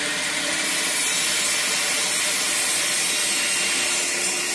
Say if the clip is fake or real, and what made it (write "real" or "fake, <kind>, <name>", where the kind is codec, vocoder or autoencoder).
real